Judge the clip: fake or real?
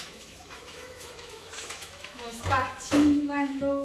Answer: fake